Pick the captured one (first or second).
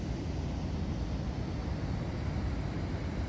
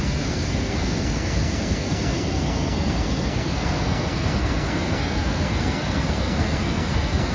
first